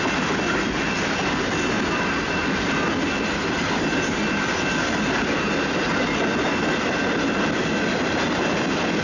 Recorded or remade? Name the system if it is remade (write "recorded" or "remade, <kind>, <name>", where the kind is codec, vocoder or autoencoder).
recorded